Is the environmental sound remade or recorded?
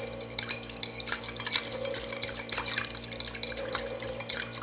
recorded